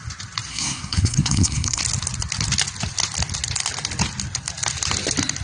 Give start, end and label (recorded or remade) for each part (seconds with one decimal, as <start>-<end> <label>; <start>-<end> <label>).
0.0-0.5 recorded; 0.5-1.8 remade; 1.8-5.4 recorded